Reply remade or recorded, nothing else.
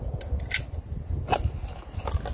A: recorded